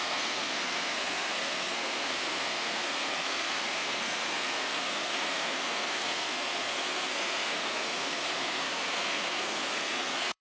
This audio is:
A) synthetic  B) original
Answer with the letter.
A